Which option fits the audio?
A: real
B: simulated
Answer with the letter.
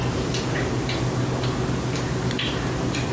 A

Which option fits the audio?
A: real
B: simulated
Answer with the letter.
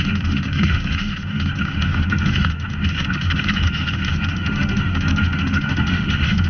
B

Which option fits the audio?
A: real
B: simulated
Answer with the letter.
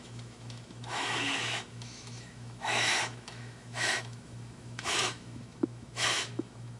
B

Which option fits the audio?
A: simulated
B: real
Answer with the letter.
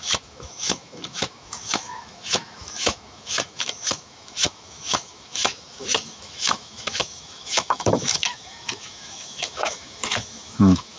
A